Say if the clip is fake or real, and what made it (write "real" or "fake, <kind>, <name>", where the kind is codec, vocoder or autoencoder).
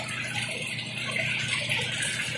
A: real